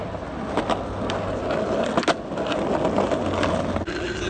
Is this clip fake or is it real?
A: real